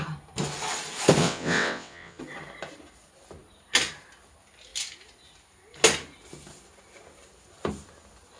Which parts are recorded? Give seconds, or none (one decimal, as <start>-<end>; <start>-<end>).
0.0-1.2; 2.2-8.4